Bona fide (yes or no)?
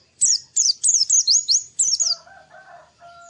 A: no